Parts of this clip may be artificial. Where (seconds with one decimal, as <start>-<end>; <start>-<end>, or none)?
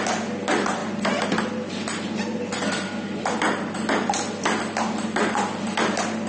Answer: none